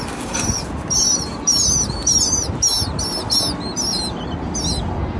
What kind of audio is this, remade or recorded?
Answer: recorded